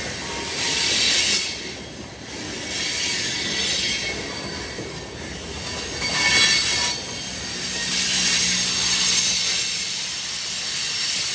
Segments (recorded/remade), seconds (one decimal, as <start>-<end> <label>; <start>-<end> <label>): 0.0-11.3 recorded